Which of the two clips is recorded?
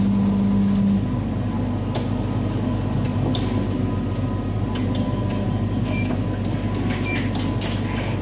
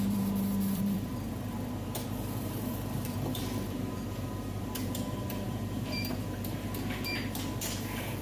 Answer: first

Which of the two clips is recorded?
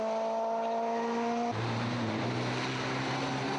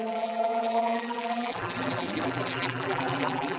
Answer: first